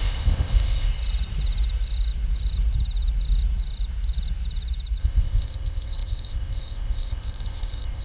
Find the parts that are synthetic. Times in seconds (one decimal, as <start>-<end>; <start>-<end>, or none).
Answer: 0.0-0.9; 5.0-8.0